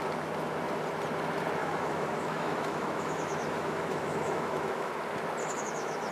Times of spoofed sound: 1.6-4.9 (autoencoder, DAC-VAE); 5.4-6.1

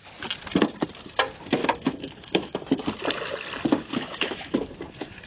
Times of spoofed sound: 1.6-2.6 (autoencoder, DAC-VAE); 3.9-4.7

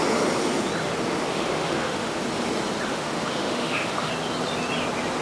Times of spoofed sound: 1.3-2.2 (autoencoder, DAC-VAE); 2.9-4.1

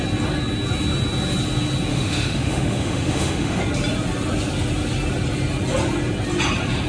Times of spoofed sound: 1.9-3.6 (autoencoder, DAC-VAE)

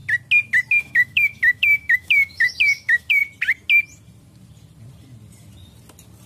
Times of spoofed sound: 0.7-3.2 (autoencoder, DAC-VAE)

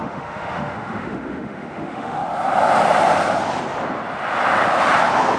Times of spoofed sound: 0.0-2.2 (autoencoder, DAC-VAE)

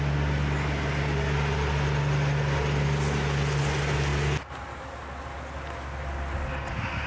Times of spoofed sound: none

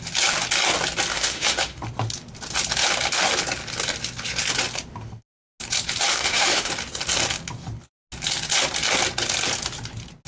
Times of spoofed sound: 1.1-1.8 (autoencoder, DAC-VAE); 6.1-6.7